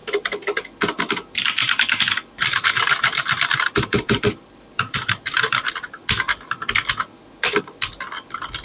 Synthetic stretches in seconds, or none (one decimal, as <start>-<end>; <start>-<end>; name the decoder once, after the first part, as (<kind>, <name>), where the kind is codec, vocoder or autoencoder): 1.6-5.7 (vocoder, BigVGAN v2)